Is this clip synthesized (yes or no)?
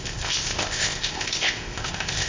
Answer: yes